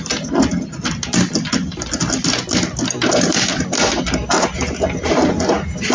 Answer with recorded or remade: recorded